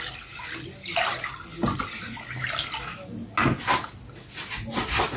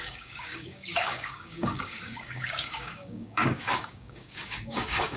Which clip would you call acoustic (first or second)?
first